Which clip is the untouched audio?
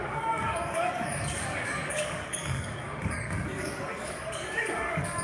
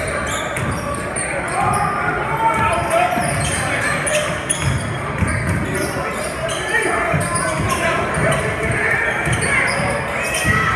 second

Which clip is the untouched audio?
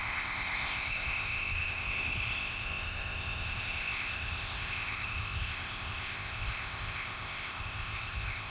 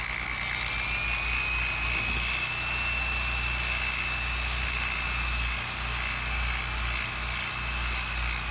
second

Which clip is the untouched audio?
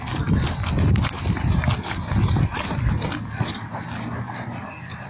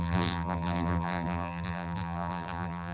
first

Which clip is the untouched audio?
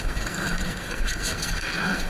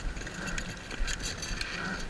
second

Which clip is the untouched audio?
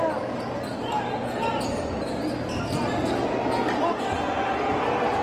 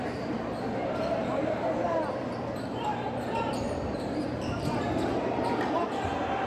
first